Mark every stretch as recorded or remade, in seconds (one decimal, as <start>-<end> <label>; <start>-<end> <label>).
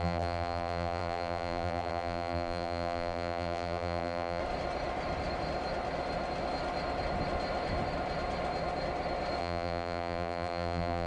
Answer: 0.0-4.4 remade; 4.4-9.4 recorded; 9.4-11.1 remade